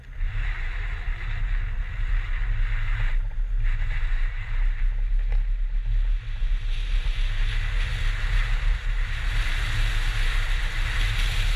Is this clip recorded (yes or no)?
yes